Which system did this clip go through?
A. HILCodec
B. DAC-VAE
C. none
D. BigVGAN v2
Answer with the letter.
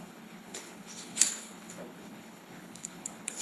A